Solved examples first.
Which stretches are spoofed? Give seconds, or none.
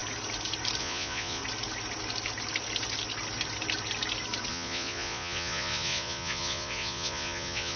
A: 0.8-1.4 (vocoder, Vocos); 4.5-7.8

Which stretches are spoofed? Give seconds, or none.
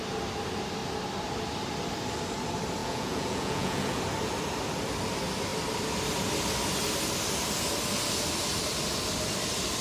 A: 2.8-4.0 (vocoder, Vocos)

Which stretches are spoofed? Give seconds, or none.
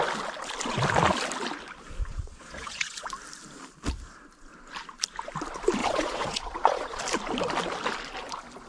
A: 2.1-3.1 (vocoder, Vocos); 5.8-7.0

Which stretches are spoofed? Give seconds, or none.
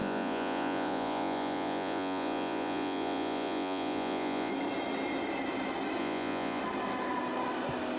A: 0.0-4.5 (vocoder, Vocos); 6.0-6.6